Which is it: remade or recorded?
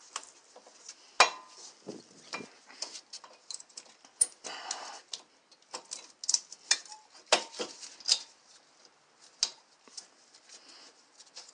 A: recorded